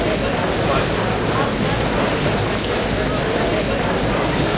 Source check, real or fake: real